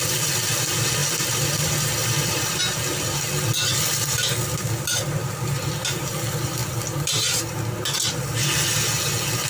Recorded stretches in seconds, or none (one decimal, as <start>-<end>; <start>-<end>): 0.0-1.0; 2.6-5.2; 5.7-9.5